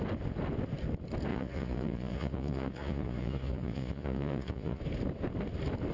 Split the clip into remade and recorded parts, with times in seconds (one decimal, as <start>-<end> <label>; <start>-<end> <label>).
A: 0.0-1.3 recorded; 1.3-4.8 remade; 4.8-5.9 recorded